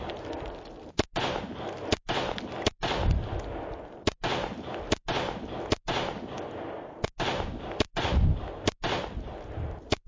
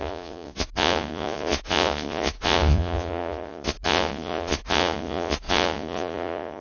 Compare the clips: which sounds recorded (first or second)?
first